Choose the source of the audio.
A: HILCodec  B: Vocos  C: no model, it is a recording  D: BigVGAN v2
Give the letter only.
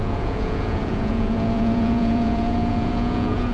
B